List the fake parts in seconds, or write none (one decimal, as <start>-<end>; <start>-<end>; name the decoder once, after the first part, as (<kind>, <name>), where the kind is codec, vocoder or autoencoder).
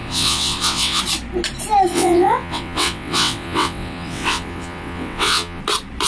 0.0-1.0 (vocoder, WaveNeXt); 1.9-5.6